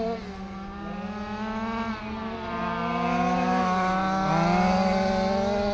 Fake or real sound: real